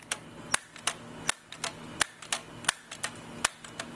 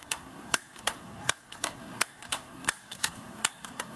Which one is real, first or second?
first